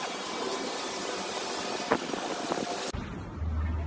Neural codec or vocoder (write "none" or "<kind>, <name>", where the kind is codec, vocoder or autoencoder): none